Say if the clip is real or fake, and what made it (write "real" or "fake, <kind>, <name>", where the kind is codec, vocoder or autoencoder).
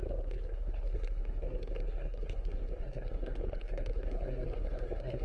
fake, codec, SNAC